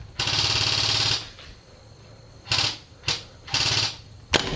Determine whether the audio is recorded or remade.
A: recorded